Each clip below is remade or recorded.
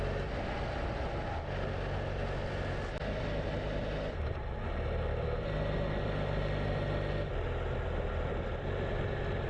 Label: recorded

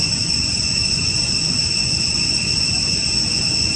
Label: remade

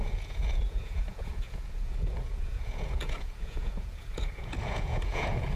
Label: remade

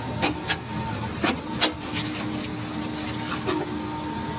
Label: recorded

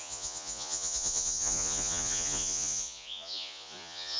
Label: remade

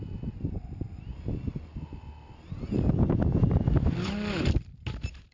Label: recorded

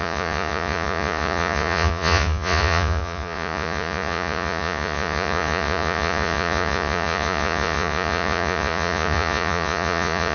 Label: remade